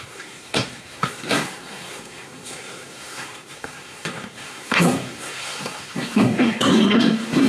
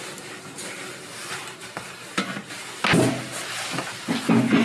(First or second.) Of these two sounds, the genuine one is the second